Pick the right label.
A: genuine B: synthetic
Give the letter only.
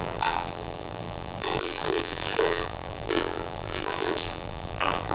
B